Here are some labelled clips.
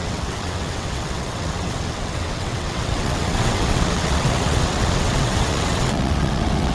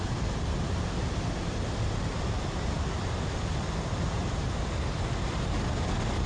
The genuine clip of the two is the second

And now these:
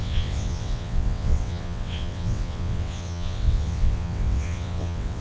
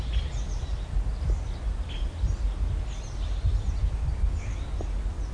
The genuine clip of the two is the second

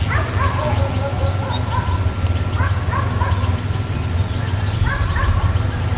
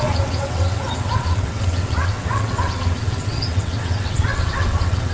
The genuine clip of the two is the first